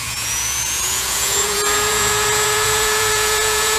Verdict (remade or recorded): remade